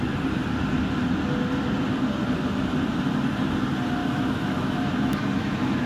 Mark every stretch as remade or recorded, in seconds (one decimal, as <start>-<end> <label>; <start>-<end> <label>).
0.0-4.0 recorded; 4.0-5.9 remade